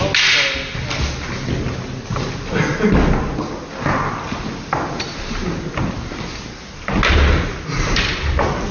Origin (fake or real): real